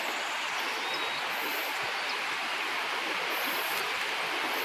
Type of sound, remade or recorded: recorded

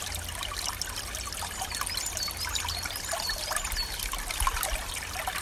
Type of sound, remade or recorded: recorded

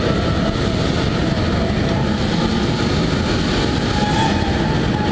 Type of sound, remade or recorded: recorded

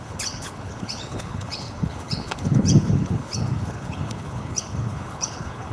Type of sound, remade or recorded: remade